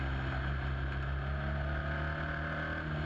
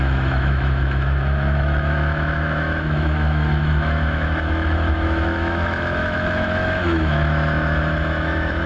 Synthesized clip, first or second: second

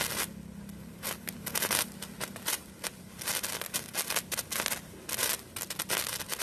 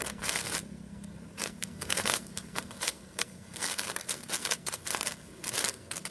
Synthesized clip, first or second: second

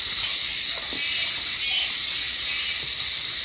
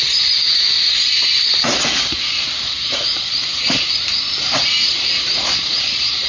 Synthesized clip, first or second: second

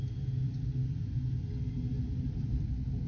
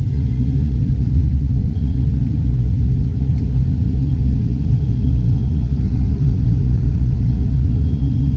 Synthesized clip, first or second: second